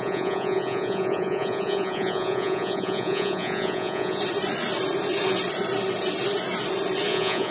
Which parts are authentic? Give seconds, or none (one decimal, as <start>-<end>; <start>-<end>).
4.2-7.1